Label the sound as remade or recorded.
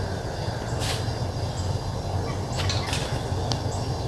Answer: recorded